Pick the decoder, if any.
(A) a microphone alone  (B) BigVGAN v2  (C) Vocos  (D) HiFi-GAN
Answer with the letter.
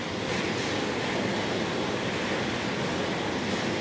A